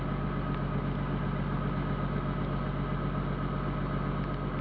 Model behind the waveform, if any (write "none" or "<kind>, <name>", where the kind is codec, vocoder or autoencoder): none